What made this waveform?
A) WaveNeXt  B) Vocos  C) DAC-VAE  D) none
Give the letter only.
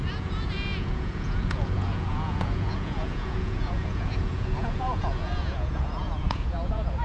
B